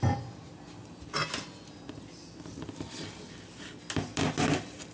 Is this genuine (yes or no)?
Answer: yes